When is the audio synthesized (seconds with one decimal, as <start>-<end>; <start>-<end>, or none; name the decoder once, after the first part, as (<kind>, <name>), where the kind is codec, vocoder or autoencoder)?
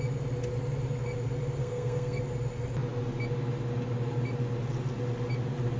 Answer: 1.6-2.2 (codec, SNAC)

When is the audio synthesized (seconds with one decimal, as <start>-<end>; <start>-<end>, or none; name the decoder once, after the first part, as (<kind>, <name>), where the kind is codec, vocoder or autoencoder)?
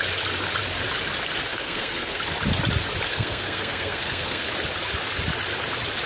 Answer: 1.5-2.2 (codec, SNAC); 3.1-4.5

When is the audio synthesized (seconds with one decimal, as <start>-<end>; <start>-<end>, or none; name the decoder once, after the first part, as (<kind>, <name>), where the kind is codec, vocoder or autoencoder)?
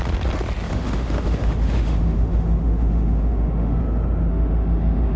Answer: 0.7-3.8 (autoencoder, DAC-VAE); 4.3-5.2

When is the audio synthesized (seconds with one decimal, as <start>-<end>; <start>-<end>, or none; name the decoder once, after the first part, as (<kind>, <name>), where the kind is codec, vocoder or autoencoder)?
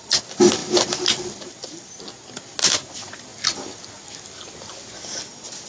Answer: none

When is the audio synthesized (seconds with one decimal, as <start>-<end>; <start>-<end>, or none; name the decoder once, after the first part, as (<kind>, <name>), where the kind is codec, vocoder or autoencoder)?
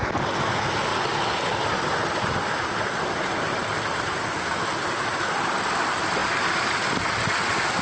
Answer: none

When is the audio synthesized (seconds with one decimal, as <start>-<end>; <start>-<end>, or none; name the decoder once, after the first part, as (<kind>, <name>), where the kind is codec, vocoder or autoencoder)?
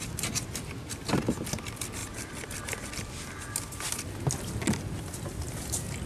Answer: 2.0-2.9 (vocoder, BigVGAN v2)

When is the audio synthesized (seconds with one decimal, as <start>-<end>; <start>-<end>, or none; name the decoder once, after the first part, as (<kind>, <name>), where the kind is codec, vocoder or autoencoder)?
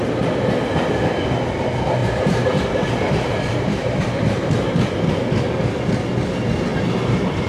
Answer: 2.0-4.5 (vocoder, BigVGAN v2); 6.7-7.5